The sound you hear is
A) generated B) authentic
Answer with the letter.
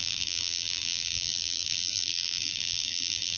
A